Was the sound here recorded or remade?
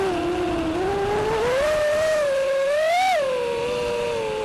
recorded